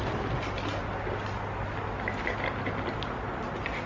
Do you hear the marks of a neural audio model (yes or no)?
no